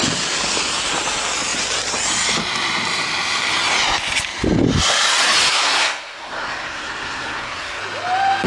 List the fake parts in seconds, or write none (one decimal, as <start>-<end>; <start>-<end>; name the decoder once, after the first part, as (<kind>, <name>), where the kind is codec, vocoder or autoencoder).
5.5-7.8 (codec, SNAC)